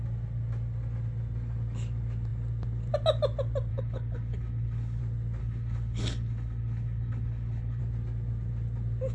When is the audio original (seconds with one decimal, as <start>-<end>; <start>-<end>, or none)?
0.0-3.7; 5.0-5.4; 7.8-9.1